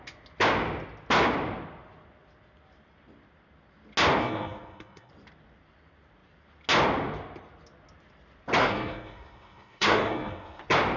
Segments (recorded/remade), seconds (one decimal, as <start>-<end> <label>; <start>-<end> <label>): 0.0-4.2 recorded; 4.2-5.1 remade; 5.1-8.6 recorded; 8.6-10.6 remade; 10.6-11.0 recorded